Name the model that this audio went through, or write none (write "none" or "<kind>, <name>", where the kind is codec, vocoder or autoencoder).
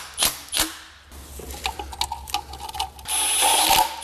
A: none